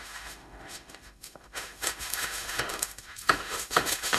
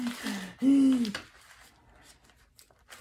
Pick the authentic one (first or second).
second